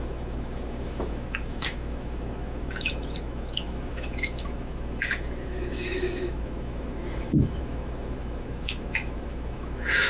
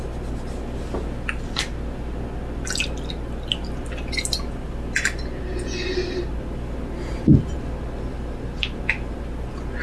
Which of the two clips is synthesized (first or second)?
first